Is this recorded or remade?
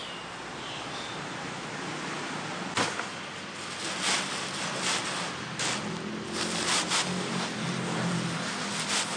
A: recorded